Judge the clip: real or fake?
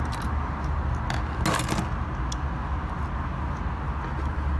real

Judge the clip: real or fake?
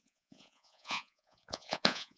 fake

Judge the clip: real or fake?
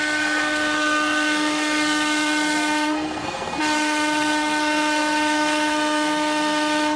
fake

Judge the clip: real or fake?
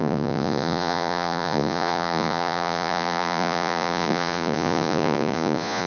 fake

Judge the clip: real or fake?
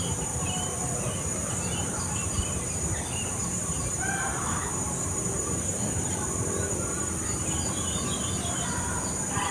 real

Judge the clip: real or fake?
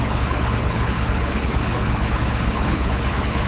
fake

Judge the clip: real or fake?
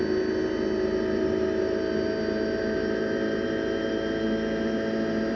real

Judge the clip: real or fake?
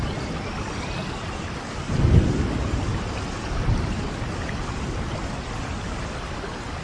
real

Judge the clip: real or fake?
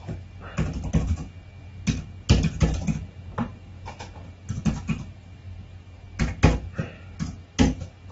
real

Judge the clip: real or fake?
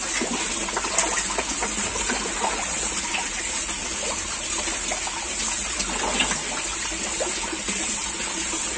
real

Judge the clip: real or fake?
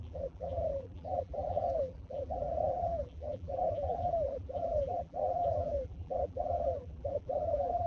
fake